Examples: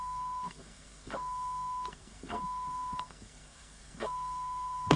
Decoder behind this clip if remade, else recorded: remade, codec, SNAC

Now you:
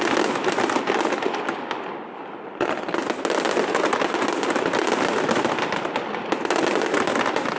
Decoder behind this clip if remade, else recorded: recorded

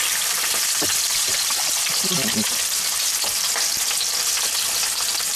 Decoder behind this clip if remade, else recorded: remade, vocoder, BigVGAN v2